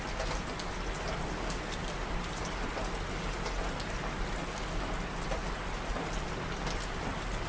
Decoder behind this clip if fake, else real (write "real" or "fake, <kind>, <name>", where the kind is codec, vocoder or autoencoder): real